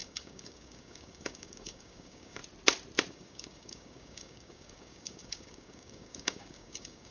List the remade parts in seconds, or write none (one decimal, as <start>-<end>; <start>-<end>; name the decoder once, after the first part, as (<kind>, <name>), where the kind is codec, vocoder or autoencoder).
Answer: 0.0-2.4 (codec, DAC); 3.1-7.1